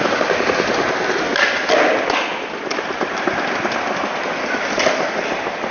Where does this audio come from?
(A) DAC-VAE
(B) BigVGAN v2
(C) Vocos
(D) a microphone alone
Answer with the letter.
D